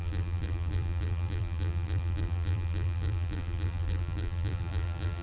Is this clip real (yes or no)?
no